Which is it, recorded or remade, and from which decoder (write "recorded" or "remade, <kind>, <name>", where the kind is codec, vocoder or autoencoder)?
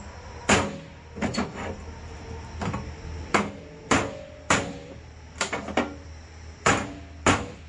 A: recorded